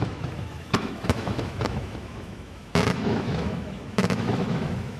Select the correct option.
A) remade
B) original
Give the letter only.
A